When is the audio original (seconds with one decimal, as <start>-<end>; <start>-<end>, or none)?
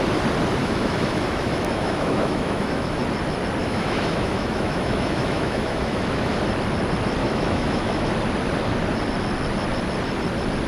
0.0-0.6; 3.0-3.6; 6.3-7.2; 8.1-10.7